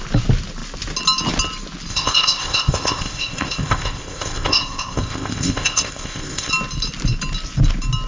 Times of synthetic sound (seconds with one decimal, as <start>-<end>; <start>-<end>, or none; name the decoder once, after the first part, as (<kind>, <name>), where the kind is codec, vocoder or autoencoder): 1.9-6.5 (codec, ZipCodec)